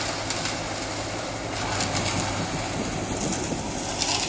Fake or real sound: real